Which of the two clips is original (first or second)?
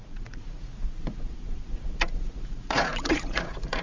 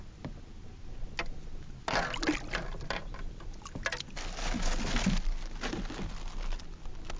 second